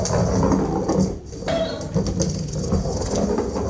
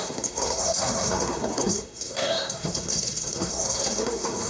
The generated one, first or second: second